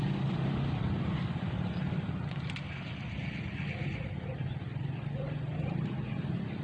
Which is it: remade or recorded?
recorded